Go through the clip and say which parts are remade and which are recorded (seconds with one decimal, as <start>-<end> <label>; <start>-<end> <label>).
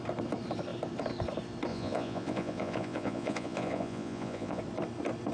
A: 0.0-1.7 recorded; 1.7-4.6 remade; 4.6-5.3 recorded